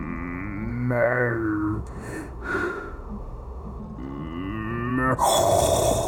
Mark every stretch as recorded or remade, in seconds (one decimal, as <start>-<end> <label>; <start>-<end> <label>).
0.0-0.7 recorded; 0.7-3.8 remade; 3.8-6.1 recorded